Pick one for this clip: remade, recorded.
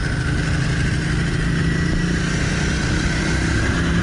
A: recorded